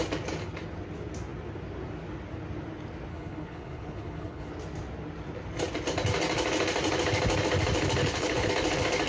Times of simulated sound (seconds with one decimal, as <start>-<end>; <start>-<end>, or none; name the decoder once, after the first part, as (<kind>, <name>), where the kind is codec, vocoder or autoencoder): 3.1-4.5 (codec, HILCodec); 8.0-8.5